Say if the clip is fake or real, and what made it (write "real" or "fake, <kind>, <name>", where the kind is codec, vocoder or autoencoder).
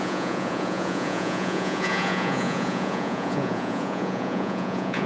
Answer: fake, vocoder, Vocos